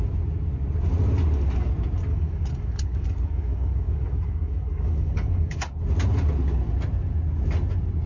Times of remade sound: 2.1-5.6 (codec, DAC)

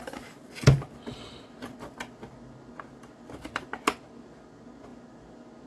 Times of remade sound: none